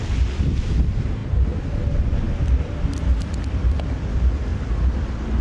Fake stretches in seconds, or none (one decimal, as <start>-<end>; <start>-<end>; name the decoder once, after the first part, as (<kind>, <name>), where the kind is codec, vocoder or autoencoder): none